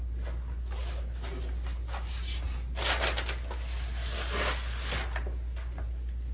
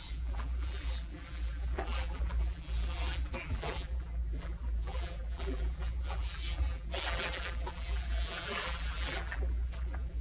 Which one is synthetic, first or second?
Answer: second